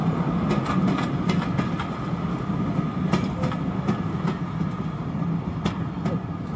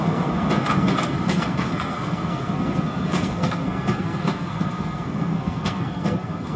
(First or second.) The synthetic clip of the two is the second